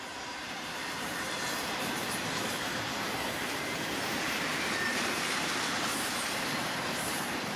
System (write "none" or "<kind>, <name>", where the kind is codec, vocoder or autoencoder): vocoder, BigVGAN v2